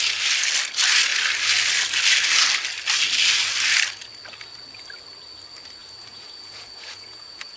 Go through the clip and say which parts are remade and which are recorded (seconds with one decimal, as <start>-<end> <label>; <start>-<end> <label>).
0.0-5.8 recorded; 5.8-7.6 remade